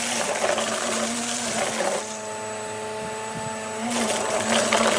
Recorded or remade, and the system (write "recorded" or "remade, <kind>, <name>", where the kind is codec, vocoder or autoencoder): recorded